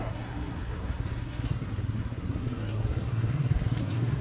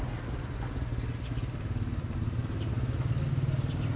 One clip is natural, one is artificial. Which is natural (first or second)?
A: second